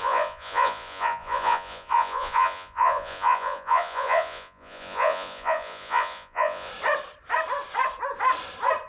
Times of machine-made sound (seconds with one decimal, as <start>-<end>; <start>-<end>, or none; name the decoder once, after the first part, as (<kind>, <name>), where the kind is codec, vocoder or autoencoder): 0.0-6.7 (vocoder, Vocos)